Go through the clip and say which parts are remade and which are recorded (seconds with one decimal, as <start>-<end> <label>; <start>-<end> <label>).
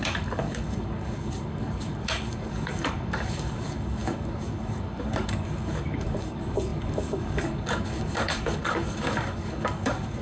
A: 0.0-10.2 remade